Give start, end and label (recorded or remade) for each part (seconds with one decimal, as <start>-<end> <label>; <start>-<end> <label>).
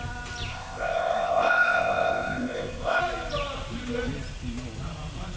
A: 0.0-0.5 recorded; 0.5-3.0 remade; 3.0-5.4 recorded